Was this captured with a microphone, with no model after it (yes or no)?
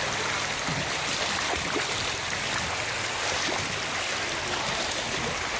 yes